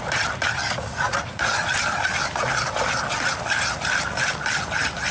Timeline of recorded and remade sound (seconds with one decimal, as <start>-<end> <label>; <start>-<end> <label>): 0.0-0.9 recorded; 0.9-1.7 remade; 1.7-5.1 recorded